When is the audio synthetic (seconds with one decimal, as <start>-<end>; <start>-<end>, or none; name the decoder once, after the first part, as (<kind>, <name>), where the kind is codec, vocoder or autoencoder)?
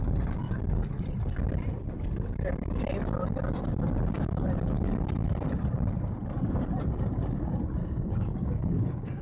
7.8-9.2 (codec, DAC)